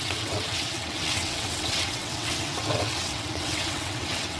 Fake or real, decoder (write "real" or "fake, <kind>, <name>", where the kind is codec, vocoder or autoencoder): fake, vocoder, WaveNeXt